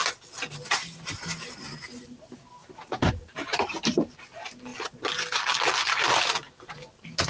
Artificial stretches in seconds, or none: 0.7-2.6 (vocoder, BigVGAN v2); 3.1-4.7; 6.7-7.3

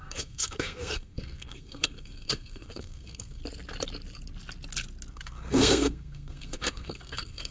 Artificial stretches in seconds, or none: 0.0-3.4 (codec, SNAC); 5.1-7.5

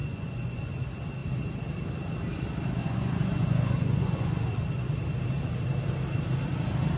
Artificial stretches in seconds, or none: 0.0-0.7 (vocoder, Vocos); 2.8-4.5

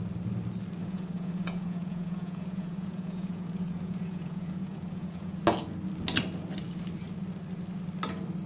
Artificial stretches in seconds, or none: 0.8-5.4 (vocoder, Vocos)

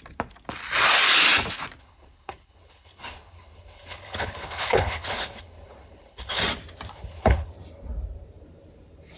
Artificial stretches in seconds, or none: 1.8-6.4 (codec, HILCodec); 6.9-7.5

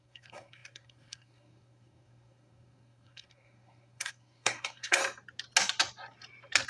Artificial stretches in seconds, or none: 0.0-5.0 (codec, SNAC)

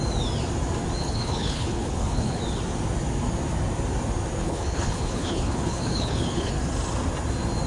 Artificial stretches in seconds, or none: 1.0-2.4 (codec, HILCodec); 4.4-6.5